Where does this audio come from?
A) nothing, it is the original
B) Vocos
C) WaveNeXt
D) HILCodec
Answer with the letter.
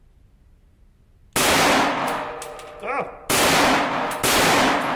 A